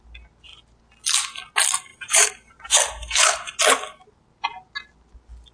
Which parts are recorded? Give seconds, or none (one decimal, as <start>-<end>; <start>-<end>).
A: 0.0-1.9; 3.6-5.5